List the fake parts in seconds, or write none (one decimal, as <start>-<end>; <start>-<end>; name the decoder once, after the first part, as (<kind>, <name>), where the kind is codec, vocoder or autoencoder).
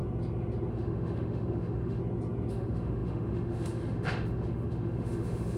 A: 0.7-2.0 (autoencoder, DAC-VAE); 2.5-5.6